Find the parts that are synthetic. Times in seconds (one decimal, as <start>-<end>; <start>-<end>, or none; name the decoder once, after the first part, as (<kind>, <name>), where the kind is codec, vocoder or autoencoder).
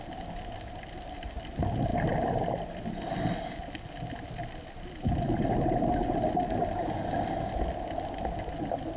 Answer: none